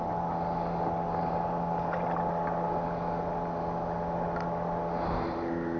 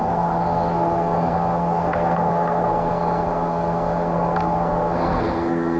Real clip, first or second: first